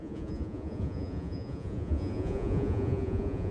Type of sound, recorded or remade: remade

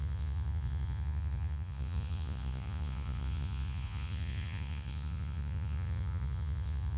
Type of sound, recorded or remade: remade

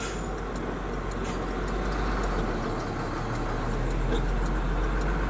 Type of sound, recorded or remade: recorded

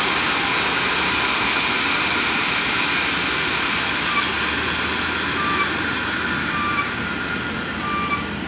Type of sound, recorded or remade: recorded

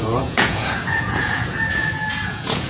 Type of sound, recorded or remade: remade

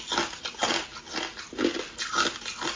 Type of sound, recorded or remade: recorded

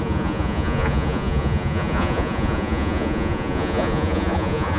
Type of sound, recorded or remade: remade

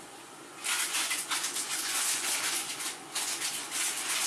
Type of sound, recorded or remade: remade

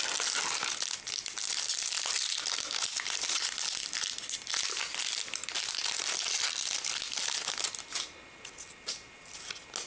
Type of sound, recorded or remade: recorded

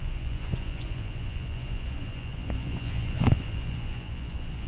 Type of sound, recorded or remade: remade